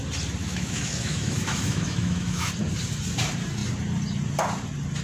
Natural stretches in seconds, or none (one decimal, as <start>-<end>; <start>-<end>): 0.0-0.4; 2.5-5.0